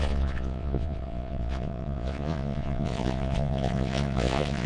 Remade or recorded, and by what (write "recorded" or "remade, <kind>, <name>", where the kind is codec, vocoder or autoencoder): remade, vocoder, Vocos